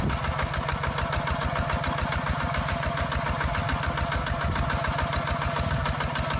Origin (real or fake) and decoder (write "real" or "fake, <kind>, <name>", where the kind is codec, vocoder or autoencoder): real